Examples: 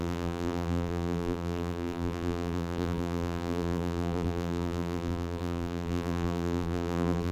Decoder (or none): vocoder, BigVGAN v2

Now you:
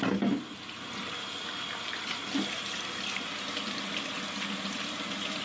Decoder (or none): none